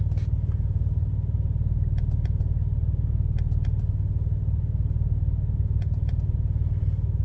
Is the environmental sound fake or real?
real